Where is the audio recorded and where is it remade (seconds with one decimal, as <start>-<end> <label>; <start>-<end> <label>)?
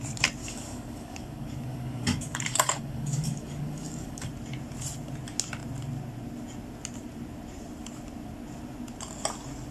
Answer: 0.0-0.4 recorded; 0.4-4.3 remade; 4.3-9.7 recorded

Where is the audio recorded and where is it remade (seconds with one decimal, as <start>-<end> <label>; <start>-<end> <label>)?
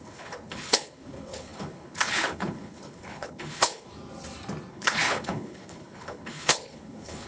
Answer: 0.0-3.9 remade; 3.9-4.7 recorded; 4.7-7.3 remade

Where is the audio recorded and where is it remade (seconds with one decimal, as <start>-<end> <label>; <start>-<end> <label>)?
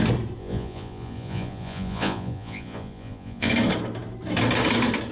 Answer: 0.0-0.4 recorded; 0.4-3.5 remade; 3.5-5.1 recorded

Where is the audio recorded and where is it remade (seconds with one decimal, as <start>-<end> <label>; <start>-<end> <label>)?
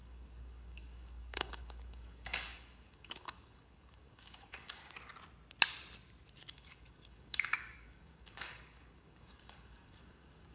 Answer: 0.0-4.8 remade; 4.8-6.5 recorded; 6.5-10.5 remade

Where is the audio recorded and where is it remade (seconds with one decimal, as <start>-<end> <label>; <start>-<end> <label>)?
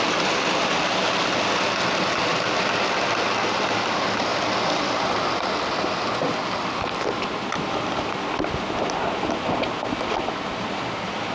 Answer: 0.0-11.3 recorded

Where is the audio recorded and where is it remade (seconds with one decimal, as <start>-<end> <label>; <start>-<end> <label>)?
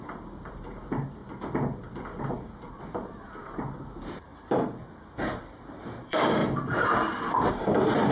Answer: 0.0-1.2 remade; 1.2-2.2 recorded; 2.2-6.4 remade; 6.4-7.5 recorded; 7.5-8.1 remade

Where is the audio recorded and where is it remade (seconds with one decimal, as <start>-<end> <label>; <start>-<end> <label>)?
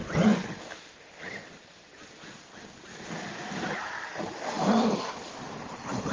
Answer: 0.0-0.6 recorded; 0.6-1.7 remade; 1.7-5.4 recorded; 5.4-6.1 remade